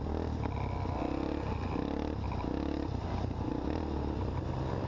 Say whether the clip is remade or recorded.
recorded